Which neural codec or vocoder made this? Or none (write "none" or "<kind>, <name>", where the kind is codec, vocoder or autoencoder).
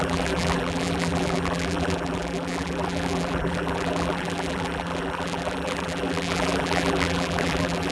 vocoder, BigVGAN v2